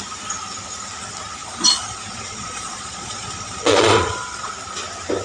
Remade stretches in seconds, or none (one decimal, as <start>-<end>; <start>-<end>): 1.4-4.5